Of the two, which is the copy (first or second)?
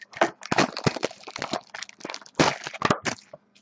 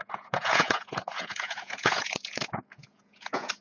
second